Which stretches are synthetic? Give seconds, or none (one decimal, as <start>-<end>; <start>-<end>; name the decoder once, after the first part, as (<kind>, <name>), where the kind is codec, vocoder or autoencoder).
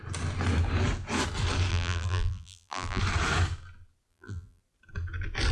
1.7-3.0 (vocoder, BigVGAN v2); 4.1-4.6